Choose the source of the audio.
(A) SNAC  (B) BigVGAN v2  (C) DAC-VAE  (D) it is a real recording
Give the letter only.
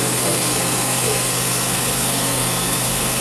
A